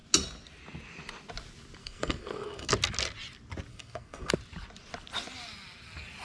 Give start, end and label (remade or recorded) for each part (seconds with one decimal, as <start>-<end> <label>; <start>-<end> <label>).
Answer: 0.0-1.8 recorded; 1.8-2.7 remade; 2.7-3.7 recorded; 3.7-4.3 remade; 4.3-6.2 recorded